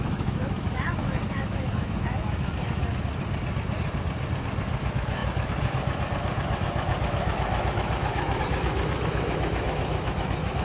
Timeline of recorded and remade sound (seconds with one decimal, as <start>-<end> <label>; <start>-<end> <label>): 0.0-3.1 remade; 3.1-4.8 recorded; 4.8-10.6 remade